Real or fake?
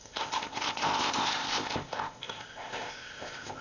fake